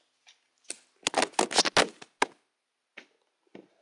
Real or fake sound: real